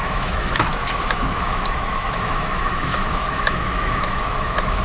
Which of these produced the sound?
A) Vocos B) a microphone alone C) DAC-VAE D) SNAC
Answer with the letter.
C